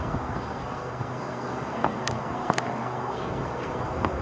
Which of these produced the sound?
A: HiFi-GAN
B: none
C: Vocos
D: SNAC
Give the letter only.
D